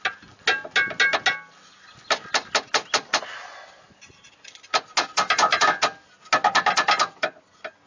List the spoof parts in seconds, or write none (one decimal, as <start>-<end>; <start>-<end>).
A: none